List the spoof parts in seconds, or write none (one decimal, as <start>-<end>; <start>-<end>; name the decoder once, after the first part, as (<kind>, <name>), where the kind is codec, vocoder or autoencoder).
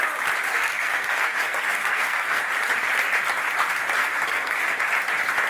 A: 0.5-2.4 (codec, SNAC); 4.0-4.8